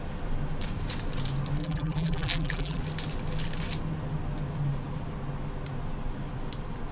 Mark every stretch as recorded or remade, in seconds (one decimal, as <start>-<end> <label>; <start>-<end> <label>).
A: 0.0-1.6 recorded; 1.6-2.8 remade; 2.8-6.9 recorded